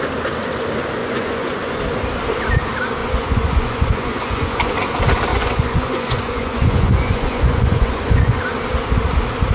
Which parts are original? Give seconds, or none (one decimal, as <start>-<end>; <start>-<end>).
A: 0.0-1.0; 1.8-3.0; 4.7-5.3; 8.4-9.5